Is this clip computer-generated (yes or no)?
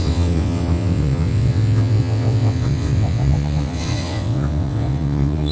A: yes